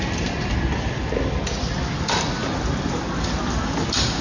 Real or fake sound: real